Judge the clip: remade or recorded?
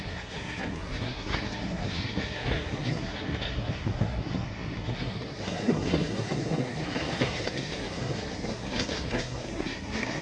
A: remade